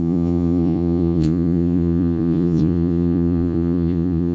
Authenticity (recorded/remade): remade